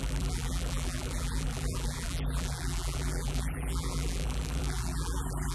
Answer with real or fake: fake